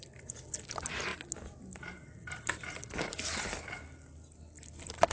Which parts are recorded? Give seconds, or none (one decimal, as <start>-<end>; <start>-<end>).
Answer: 0.0-5.1